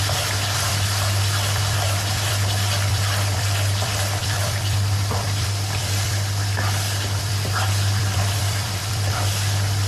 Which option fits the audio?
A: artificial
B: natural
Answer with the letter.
A